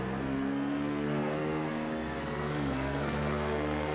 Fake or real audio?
fake